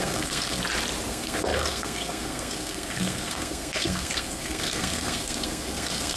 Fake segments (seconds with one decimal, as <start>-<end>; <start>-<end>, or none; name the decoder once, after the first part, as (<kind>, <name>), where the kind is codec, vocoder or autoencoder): 0.0-0.6 (codec, SNAC); 1.1-6.2